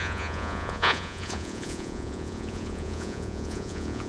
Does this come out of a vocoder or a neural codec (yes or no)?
yes